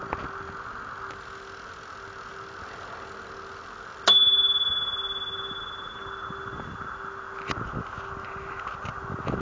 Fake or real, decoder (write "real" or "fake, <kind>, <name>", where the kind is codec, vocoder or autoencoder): real